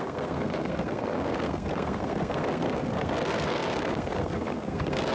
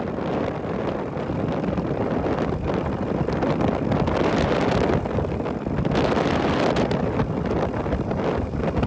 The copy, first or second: first